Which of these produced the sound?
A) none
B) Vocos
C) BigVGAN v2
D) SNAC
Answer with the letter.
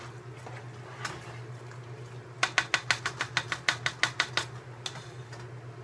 A